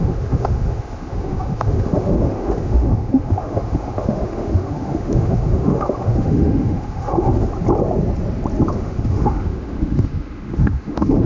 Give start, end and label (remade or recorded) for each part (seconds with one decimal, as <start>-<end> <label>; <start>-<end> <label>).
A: 0.0-7.5 remade; 7.5-8.7 recorded; 8.7-11.3 remade